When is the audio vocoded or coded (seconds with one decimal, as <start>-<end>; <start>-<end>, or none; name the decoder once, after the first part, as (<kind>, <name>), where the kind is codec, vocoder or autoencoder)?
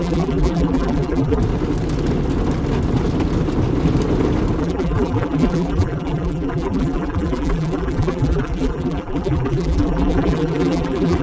0.0-1.4 (vocoder, BigVGAN v2); 4.6-11.2